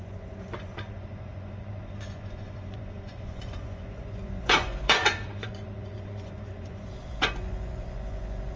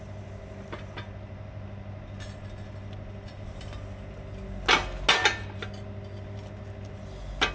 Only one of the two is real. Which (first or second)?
second